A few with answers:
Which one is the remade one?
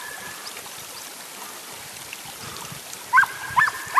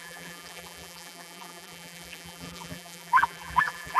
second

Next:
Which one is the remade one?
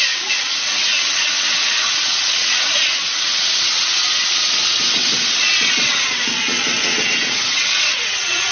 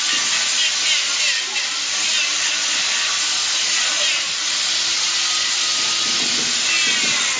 first